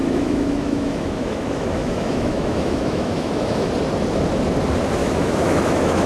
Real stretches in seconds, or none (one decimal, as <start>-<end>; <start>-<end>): 3.7-5.0